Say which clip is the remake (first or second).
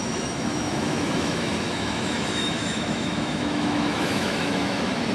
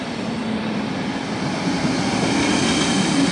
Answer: first